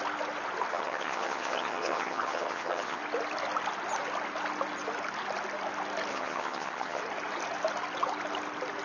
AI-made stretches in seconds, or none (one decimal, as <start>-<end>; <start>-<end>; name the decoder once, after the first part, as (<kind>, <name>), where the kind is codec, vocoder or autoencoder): 0.7-3.0 (vocoder, HiFi-GAN); 6.1-7.0